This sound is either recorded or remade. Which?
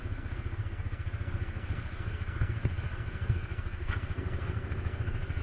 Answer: remade